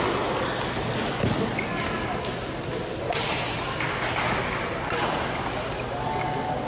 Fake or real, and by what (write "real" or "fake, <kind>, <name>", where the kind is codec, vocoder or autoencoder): real